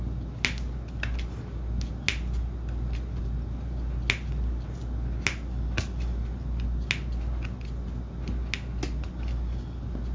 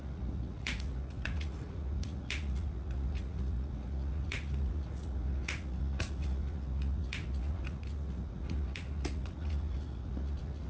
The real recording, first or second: first